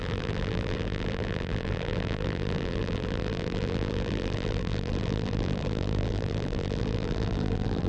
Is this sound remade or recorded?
remade